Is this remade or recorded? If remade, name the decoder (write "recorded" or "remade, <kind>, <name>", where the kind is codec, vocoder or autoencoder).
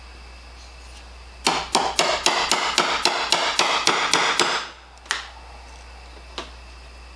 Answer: recorded